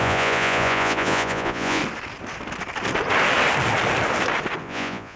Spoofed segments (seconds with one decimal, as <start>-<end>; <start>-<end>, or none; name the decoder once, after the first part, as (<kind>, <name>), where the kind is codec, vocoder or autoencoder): 0.0-1.8 (vocoder, Vocos); 4.6-5.2